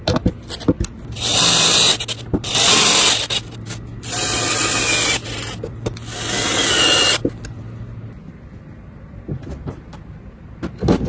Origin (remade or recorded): recorded